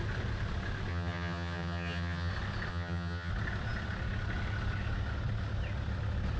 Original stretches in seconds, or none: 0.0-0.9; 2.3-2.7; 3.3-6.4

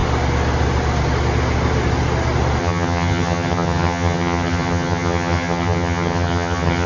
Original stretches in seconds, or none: 0.0-2.6

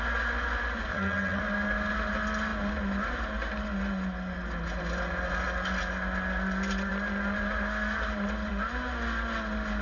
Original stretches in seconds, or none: 0.0-0.9; 1.4-9.8

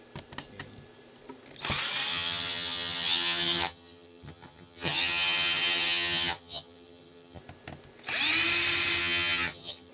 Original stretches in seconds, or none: 0.0-2.1; 7.4-9.0

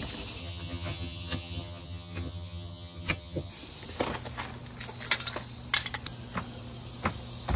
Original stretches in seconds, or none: 0.0-0.4; 3.5-7.6

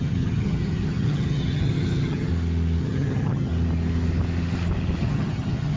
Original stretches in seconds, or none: 2.3-2.8; 3.5-5.0